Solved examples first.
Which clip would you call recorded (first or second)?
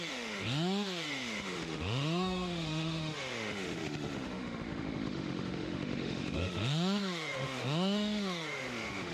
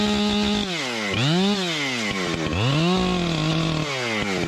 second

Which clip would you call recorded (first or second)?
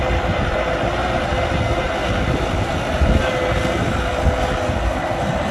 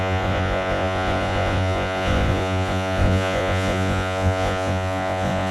first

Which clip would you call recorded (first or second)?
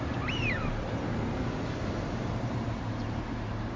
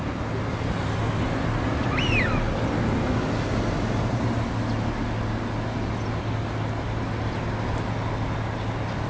second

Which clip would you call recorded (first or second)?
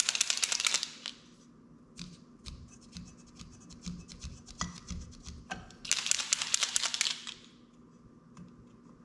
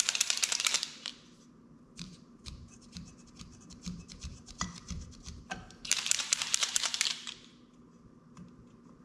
first